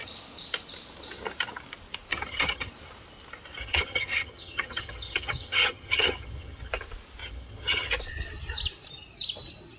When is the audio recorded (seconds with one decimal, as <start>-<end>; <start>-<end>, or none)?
0.0-2.1; 2.7-3.6; 6.7-7.2; 7.9-9.8